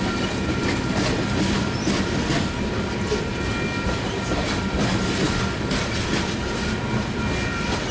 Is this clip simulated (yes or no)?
no